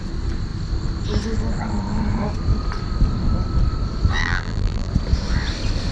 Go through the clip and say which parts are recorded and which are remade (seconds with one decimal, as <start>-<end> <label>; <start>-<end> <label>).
0.0-4.2 recorded; 4.2-4.9 remade; 4.9-5.9 recorded